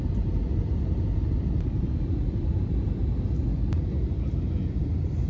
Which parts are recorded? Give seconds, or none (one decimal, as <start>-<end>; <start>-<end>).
3.0-5.3

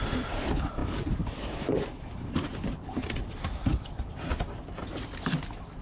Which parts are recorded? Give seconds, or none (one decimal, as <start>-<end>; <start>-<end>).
3.7-5.8

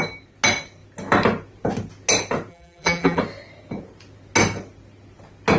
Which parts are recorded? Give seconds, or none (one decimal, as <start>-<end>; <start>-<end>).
0.0-2.5; 3.2-5.6

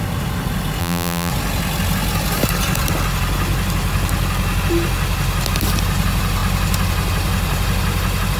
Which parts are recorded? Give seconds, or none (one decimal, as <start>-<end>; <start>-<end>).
0.0-0.8; 1.3-8.4

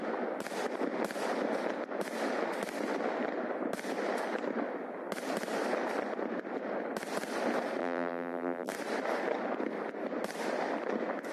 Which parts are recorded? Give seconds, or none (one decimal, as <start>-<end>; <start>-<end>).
0.0-7.8; 8.7-11.3

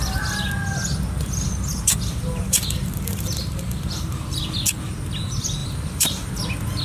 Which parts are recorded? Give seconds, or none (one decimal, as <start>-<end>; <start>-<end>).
0.0-1.7; 4.4-5.6; 6.3-6.8

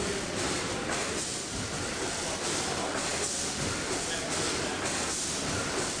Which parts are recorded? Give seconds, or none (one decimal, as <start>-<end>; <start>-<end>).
0.0-6.0

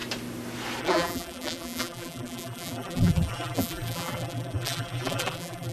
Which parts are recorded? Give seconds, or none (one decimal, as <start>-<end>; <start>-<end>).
0.0-0.8